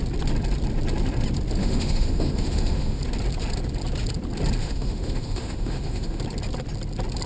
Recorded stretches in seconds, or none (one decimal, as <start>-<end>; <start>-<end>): 0.0-1.6; 3.0-4.6; 6.2-7.3